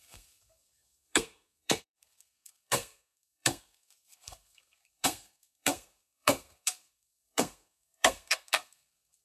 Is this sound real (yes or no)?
no